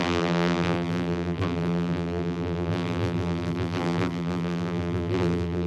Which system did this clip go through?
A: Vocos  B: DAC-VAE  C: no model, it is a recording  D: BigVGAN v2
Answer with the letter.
D